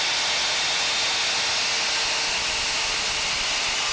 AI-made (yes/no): no